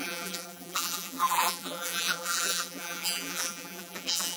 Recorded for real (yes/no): no